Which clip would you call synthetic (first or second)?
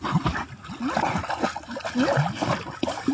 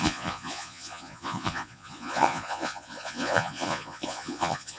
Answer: second